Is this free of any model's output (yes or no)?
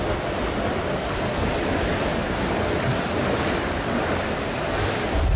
yes